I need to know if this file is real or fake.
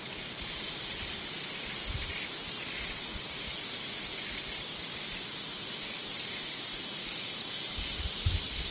real